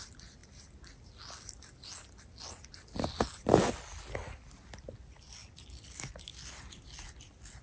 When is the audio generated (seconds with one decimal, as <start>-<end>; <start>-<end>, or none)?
none